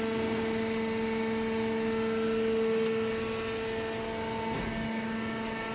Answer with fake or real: real